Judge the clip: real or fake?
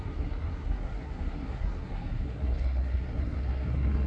fake